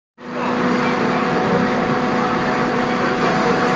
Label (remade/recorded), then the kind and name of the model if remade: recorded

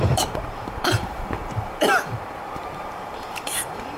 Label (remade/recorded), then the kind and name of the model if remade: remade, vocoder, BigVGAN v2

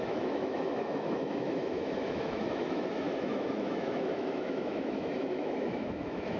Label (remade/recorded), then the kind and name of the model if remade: remade, autoencoder, DAC-VAE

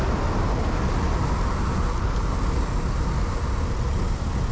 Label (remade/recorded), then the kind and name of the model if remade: recorded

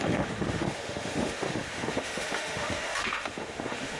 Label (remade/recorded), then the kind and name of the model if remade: remade, autoencoder, DAC-VAE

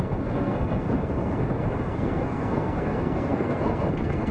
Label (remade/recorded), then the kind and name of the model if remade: remade, codec, SNAC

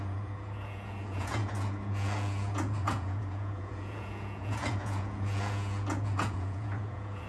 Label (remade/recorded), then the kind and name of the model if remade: remade, vocoder, Vocos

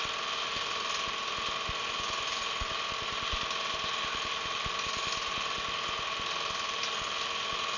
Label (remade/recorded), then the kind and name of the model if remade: recorded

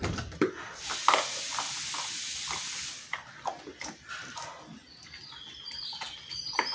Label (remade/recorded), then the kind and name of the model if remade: recorded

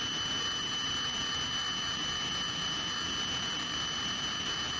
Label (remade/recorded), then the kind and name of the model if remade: recorded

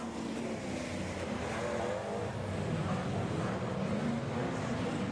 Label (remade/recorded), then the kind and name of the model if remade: recorded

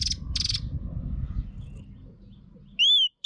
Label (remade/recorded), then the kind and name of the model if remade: recorded